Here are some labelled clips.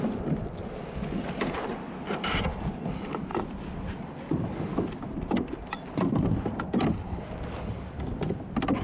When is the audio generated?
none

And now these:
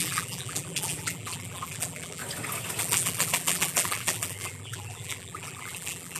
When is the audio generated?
0.0-2.2 (vocoder, BigVGAN v2); 2.8-6.2

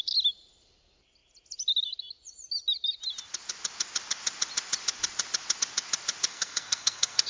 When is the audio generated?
6.3-7.3 (codec, SNAC)